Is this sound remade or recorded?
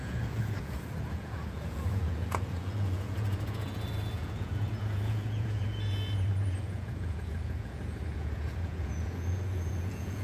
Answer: remade